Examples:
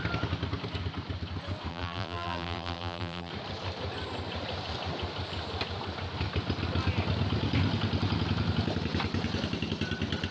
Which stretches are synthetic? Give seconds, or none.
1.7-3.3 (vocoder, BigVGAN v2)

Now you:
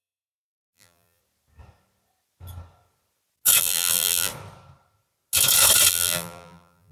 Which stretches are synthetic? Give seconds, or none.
0.0-1.2 (vocoder, BigVGAN v2); 3.6-4.3; 5.9-6.9

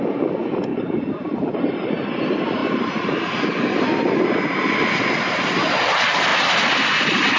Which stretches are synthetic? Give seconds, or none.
0.7-1.9 (vocoder, BigVGAN v2); 6.3-7.4

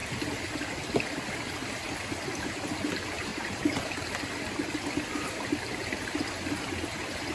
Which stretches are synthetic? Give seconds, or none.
3.3-4.0 (vocoder, BigVGAN v2)

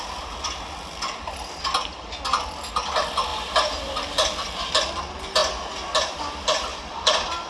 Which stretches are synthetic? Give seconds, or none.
3.3-4.7 (vocoder, BigVGAN v2); 6.7-7.5